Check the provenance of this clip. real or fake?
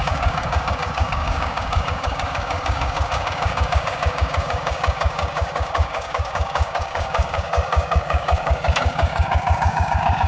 fake